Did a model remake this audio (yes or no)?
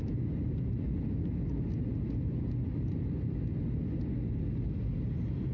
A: no